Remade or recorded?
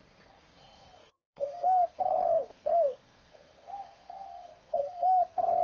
remade